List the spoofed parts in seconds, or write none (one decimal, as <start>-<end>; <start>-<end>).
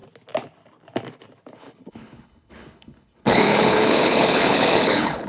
1.5-5.3